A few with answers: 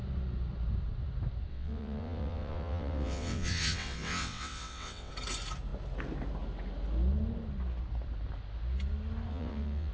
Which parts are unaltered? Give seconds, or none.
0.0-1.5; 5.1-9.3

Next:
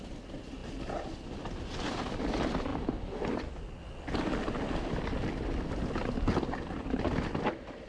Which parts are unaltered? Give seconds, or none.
0.0-7.9

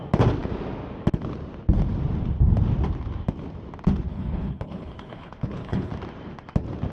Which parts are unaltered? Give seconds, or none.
0.0-4.1; 5.9-6.9

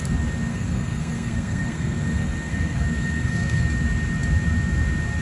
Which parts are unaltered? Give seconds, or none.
0.0-0.5; 3.6-5.2

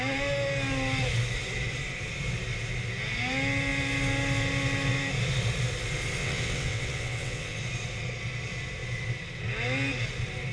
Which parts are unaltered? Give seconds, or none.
0.0-6.2; 7.6-10.5

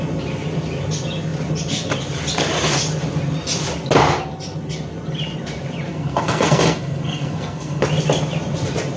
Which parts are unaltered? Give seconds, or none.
0.0-5.9; 7.8-9.0